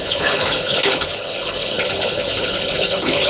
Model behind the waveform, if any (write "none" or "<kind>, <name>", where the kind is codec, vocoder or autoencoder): codec, HILCodec